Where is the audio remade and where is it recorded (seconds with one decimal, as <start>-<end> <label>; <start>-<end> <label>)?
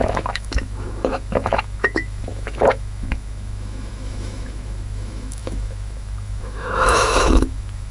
0.0-7.9 remade